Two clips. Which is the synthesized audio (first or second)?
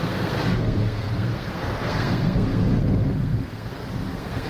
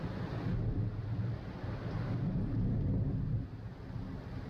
first